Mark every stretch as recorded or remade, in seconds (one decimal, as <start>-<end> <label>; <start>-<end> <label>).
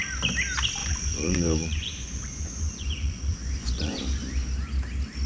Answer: 0.0-0.8 recorded; 0.8-4.0 remade; 4.0-5.3 recorded